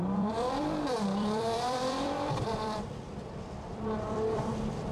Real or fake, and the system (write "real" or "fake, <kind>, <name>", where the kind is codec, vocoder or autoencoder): fake, vocoder, BigVGAN v2